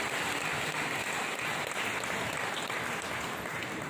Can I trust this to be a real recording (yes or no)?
yes